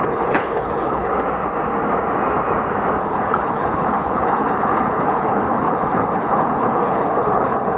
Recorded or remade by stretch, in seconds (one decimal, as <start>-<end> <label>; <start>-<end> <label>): 0.0-1.1 remade; 1.1-3.0 recorded; 3.0-7.8 remade